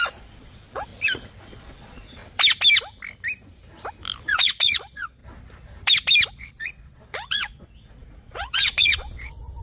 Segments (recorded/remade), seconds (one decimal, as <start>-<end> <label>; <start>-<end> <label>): 0.0-0.9 remade; 0.9-1.4 recorded; 1.4-2.2 remade; 2.2-4.2 recorded; 4.2-5.2 remade; 5.2-6.3 recorded; 6.3-9.6 remade